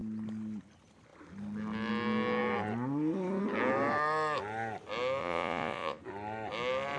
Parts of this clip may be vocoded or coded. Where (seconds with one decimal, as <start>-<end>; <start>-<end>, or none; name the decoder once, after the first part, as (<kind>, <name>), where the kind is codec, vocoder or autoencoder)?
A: 5.2-6.0 (vocoder, Vocos)